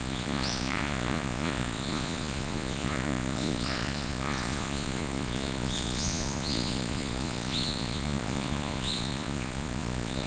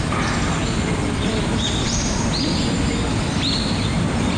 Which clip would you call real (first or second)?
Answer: second